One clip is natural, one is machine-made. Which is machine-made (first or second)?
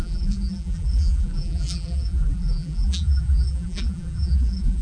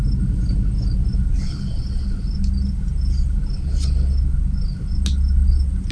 first